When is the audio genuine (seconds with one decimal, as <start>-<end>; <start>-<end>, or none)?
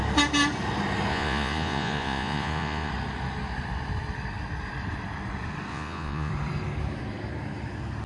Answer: 0.0-1.1; 2.9-5.7; 6.3-8.1